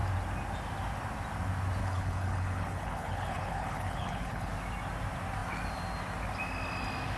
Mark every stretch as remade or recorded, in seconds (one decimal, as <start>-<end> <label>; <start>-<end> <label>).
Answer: 0.0-1.8 recorded; 1.8-4.5 remade; 4.5-7.2 recorded